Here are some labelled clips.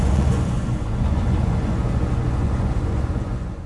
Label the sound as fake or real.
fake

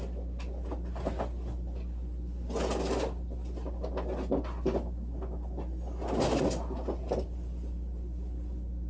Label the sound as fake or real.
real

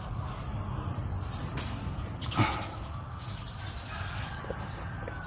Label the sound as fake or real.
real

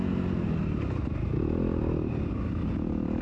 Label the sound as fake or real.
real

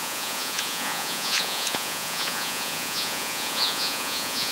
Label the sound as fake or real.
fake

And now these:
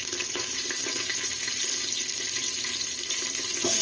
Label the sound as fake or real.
real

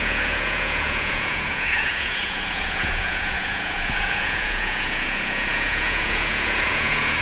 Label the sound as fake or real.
fake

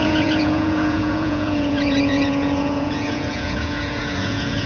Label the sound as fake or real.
fake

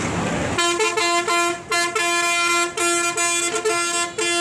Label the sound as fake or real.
real